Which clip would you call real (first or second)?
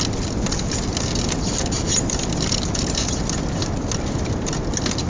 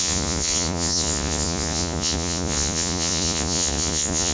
first